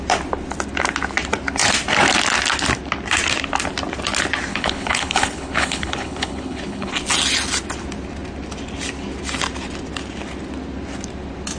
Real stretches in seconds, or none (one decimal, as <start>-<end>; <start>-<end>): 0.0-4.5; 6.9-11.6